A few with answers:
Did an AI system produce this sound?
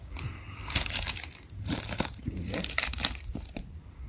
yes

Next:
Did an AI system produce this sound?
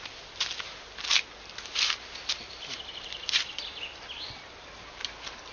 no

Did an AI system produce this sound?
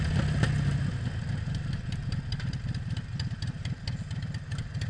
no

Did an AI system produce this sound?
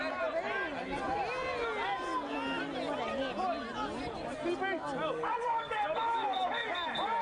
no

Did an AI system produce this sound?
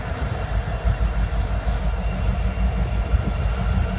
no